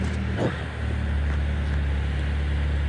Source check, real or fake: real